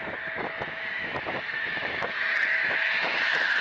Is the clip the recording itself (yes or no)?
no